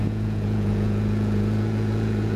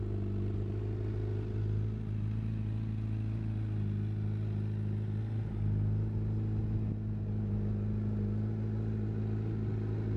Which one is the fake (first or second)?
first